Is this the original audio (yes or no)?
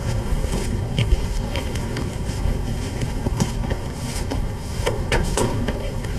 no